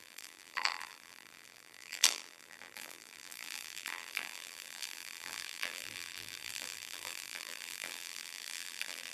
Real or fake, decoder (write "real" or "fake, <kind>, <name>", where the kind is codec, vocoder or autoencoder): fake, vocoder, BigVGAN v2